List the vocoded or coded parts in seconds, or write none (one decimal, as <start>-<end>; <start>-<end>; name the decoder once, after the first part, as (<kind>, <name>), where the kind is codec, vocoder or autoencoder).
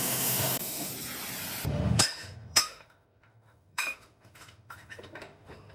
0.0-0.9 (autoencoder, DAC-VAE); 1.7-5.7